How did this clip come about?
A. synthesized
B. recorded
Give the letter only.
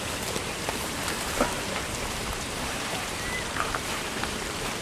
A